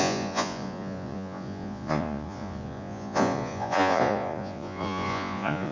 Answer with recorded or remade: remade